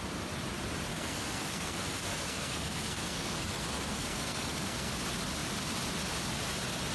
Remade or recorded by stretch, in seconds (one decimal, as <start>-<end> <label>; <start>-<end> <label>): 0.0-0.9 recorded; 0.9-4.9 remade; 4.9-6.9 recorded